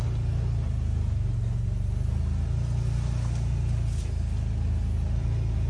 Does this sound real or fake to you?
real